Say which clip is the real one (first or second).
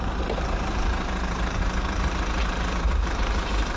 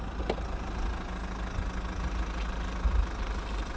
second